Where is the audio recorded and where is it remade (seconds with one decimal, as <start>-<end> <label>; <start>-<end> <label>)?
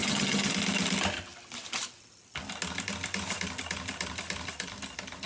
0.0-0.5 remade; 0.5-5.3 recorded